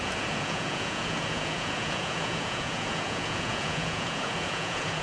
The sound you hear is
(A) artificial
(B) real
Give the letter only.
A